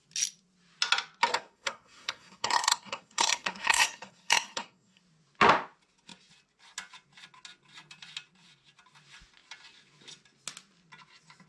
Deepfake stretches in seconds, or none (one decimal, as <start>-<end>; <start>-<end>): 1.3-5.0